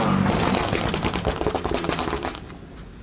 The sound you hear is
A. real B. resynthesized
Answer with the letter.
A